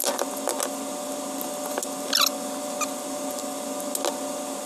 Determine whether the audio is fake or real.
real